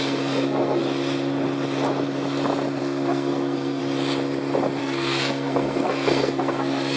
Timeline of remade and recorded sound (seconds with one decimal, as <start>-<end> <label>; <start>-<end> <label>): 0.0-0.8 remade; 0.8-2.8 recorded; 2.8-3.8 remade; 3.8-4.8 recorded; 4.8-7.0 remade